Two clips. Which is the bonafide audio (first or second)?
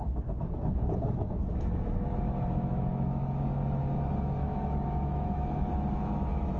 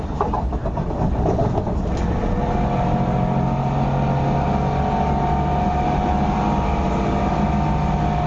second